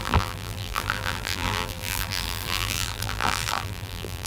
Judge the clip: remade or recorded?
remade